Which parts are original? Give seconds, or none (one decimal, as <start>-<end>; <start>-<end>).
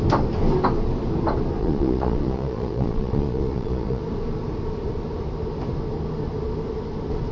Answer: 0.0-1.6; 4.0-7.3